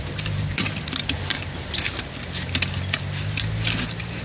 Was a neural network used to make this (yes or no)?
no